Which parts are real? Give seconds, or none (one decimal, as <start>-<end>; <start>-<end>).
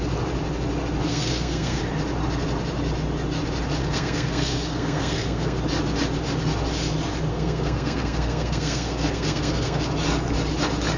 0.0-1.1; 1.8-3.8; 5.6-7.3; 9.9-11.0